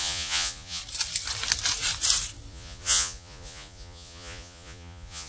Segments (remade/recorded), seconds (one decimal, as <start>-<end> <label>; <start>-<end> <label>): 0.0-0.8 remade; 0.8-2.5 recorded; 2.5-5.3 remade